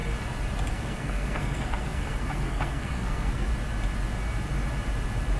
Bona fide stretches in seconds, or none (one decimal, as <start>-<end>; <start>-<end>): 0.0-0.7; 3.5-5.4